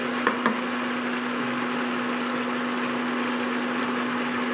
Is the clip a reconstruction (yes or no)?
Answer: no